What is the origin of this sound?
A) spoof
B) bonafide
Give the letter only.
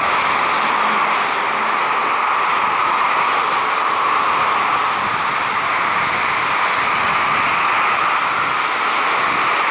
B